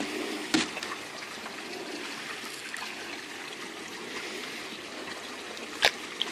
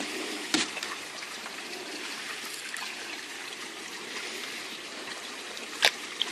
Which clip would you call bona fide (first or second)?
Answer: first